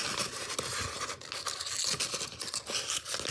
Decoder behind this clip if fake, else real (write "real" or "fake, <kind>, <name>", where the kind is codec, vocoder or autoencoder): real